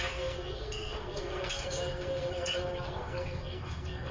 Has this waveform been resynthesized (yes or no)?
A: yes